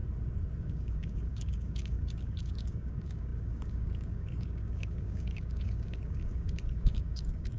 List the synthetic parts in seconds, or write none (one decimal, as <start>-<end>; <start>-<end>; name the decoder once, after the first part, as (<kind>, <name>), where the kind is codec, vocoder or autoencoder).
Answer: 0.6-7.6 (codec, DAC)